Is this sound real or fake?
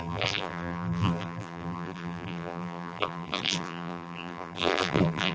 fake